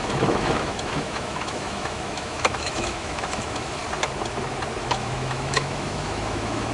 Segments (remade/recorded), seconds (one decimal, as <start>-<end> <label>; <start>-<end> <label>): 0.0-3.8 remade; 3.8-4.8 recorded; 4.8-6.7 remade